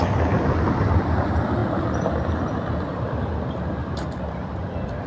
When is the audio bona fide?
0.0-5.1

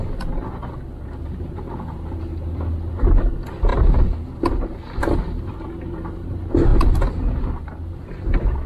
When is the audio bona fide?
0.0-8.7

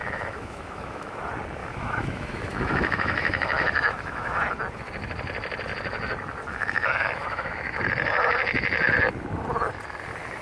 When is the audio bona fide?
1.2-1.6; 4.4-6.5; 7.8-10.4

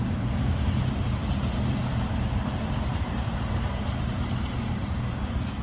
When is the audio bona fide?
1.2-1.8

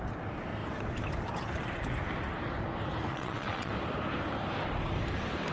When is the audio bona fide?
0.0-3.1; 3.7-5.5

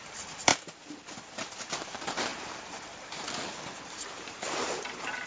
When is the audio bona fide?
0.5-1.7